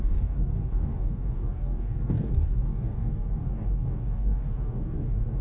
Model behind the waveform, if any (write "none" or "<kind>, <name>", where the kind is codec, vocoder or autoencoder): codec, DAC